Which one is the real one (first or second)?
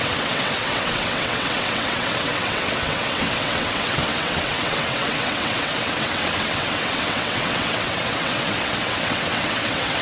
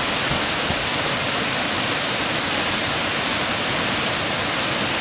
second